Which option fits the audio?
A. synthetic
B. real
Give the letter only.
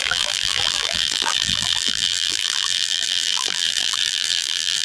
A